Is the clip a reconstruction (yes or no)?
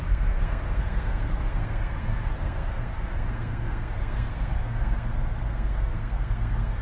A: yes